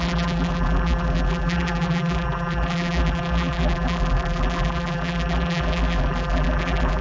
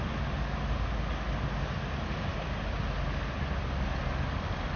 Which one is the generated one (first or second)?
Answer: first